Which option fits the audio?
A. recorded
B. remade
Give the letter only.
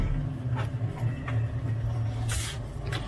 A